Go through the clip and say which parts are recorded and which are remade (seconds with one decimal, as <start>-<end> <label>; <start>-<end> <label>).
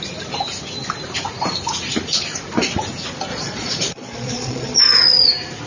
0.0-3.3 recorded; 3.3-4.8 remade; 4.8-5.7 recorded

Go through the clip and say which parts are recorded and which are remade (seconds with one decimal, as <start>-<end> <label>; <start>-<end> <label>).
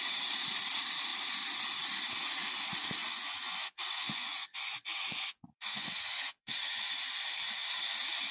0.0-3.0 recorded; 3.0-6.8 remade; 6.8-8.3 recorded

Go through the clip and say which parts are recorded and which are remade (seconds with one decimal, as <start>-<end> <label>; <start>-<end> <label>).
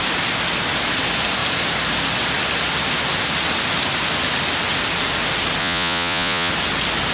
0.0-5.6 recorded; 5.6-6.5 remade; 6.5-7.1 recorded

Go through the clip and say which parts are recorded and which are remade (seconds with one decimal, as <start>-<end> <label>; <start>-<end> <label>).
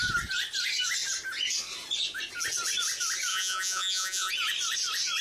0.0-3.3 recorded; 3.3-4.3 remade; 4.3-5.2 recorded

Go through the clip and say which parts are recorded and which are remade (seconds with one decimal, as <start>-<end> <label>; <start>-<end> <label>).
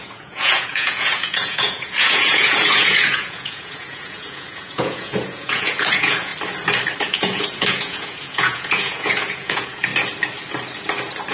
0.0-6.3 remade; 6.3-7.0 recorded; 7.0-9.9 remade; 9.9-11.3 recorded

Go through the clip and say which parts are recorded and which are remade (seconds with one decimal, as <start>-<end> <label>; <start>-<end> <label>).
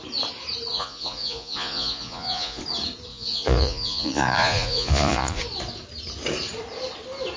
0.0-0.7 recorded; 0.7-2.6 remade; 2.6-3.1 recorded; 3.1-5.4 remade; 5.4-7.4 recorded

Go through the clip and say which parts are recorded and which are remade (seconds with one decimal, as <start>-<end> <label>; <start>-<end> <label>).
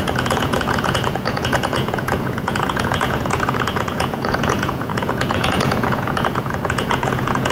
0.0-7.5 remade